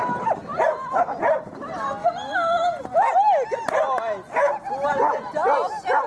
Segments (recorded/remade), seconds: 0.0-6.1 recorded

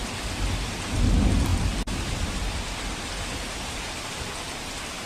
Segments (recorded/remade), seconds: 0.0-5.1 recorded

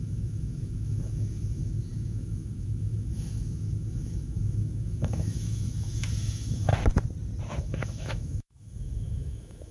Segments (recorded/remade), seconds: 0.0-6.7 remade; 6.7-7.6 recorded; 7.6-9.7 remade